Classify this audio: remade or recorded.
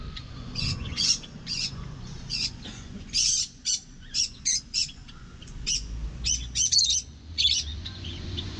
remade